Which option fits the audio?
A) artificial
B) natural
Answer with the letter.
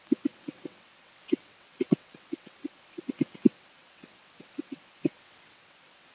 A